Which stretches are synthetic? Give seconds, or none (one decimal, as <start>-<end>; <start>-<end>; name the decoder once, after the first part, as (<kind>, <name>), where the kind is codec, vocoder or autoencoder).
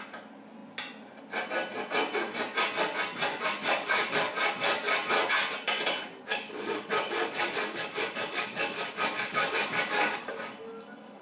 3.3-4.2 (codec, DAC); 6.3-11.2